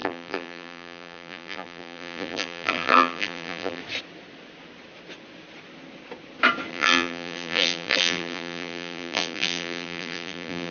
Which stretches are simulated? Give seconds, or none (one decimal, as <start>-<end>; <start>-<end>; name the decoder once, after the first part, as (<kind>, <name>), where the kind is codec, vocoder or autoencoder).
0.0-3.8 (vocoder, BigVGAN v2); 6.7-10.7